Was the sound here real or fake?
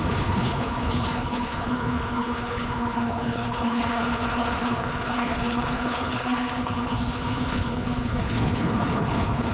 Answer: fake